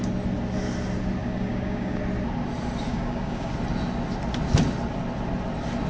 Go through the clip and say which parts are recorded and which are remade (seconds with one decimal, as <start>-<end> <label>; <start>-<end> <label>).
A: 0.0-1.2 recorded; 1.2-2.0 remade; 2.0-2.9 recorded; 2.9-3.5 remade; 3.5-5.9 recorded